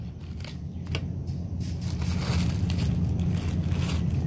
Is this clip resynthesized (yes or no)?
no